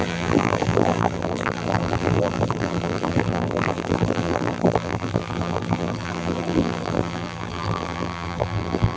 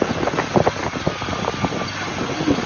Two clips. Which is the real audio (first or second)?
second